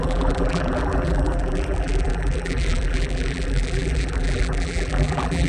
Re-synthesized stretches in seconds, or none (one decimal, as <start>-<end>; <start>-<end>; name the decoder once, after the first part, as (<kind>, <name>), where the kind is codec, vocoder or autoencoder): 0.0-5.5 (vocoder, BigVGAN v2)